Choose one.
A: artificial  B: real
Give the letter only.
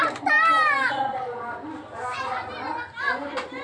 B